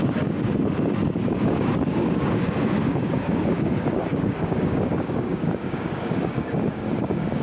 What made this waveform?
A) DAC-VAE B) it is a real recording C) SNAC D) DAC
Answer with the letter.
D